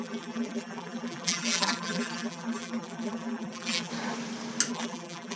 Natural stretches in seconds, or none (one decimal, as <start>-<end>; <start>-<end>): 3.9-4.7